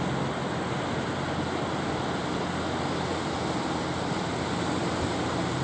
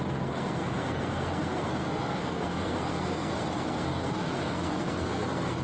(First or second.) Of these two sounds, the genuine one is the first